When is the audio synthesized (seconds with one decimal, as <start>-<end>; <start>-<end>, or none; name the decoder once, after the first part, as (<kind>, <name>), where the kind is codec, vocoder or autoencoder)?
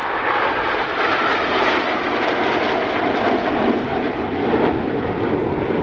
none